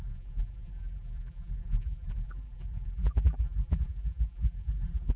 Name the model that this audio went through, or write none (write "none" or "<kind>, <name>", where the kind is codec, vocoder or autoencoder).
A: vocoder, BigVGAN v2